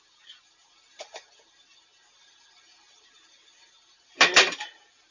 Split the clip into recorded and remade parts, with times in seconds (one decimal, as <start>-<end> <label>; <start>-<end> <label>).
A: 0.0-5.1 recorded